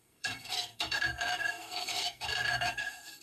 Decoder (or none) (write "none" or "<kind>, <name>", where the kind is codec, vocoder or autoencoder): codec, SNAC